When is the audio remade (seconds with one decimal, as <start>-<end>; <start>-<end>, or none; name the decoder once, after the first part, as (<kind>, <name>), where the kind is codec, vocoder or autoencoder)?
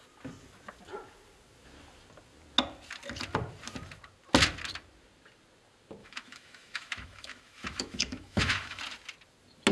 6.0-8.8 (autoencoder, DAC-VAE)